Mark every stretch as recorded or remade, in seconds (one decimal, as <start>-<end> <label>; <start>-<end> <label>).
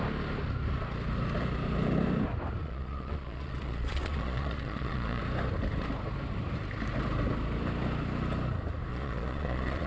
0.0-2.6 recorded; 2.6-5.2 remade; 5.2-8.9 recorded; 8.9-9.9 remade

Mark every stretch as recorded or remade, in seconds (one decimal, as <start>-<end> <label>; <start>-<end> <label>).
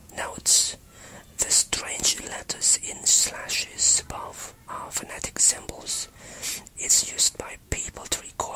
0.0-2.2 remade; 2.2-8.6 recorded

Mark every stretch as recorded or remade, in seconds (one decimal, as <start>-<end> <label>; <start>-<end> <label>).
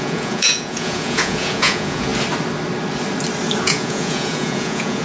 0.0-2.1 remade; 2.1-3.6 recorded; 3.6-5.0 remade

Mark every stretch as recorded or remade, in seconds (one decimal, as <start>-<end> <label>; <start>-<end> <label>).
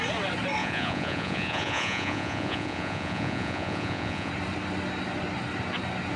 0.0-0.6 recorded; 0.6-4.3 remade; 4.3-6.2 recorded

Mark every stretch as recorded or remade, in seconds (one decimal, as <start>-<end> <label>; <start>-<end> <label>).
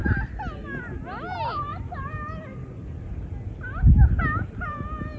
0.0-5.2 recorded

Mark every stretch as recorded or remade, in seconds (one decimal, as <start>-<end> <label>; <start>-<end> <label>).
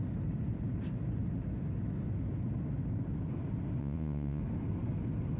0.0-3.8 recorded; 3.8-4.4 remade; 4.4-5.4 recorded